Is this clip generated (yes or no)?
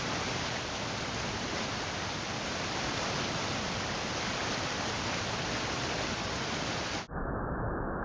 no